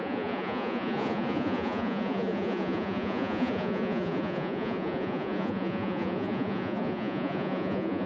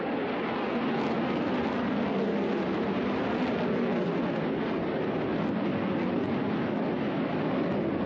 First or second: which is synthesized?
first